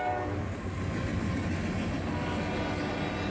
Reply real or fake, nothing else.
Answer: real